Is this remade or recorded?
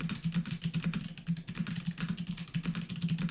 recorded